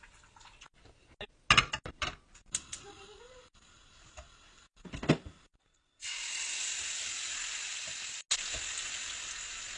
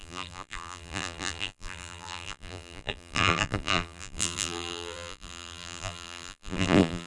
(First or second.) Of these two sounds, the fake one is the second